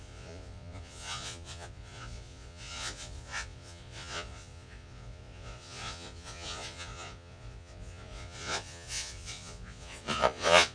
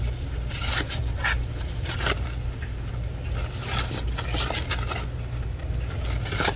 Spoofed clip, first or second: first